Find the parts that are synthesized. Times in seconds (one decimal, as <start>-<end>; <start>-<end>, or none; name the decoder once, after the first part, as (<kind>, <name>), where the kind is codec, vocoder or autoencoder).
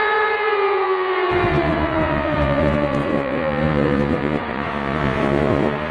0.0-5.9 (vocoder, Vocos)